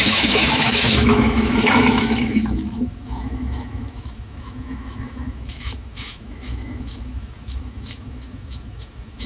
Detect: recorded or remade remade